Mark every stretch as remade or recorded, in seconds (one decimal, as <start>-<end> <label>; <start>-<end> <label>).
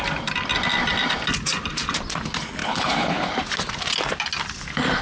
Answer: 0.0-2.6 recorded; 2.6-3.3 remade; 3.3-5.0 recorded